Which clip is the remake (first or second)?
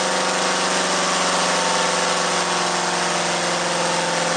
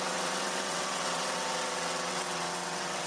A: second